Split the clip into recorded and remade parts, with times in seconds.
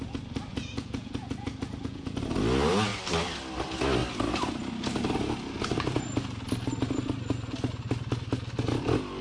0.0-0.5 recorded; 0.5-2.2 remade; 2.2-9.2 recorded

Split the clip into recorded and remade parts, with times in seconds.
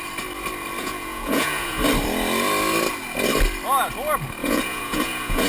0.0-0.8 recorded; 0.8-1.8 remade; 1.8-4.4 recorded; 4.4-5.5 remade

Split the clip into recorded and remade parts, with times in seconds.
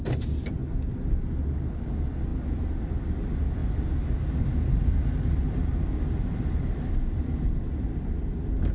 0.0-8.7 recorded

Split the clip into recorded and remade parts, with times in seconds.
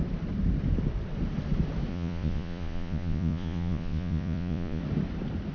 0.0-1.9 recorded; 1.9-4.8 remade; 4.8-5.5 recorded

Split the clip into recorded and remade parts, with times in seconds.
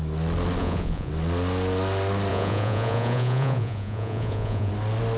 0.0-0.6 recorded; 0.6-1.1 remade; 1.1-2.3 recorded; 2.3-4.7 remade; 4.7-5.2 recorded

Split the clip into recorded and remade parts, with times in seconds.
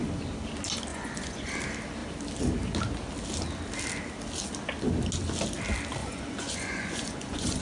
0.0-0.9 recorded; 0.9-1.5 remade; 1.5-6.0 recorded; 6.0-7.6 remade